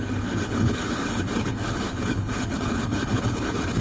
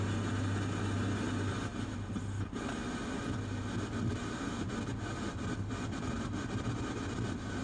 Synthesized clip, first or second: first